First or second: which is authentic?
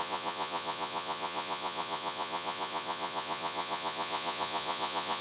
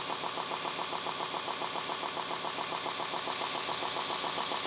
second